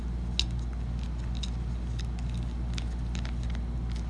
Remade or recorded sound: recorded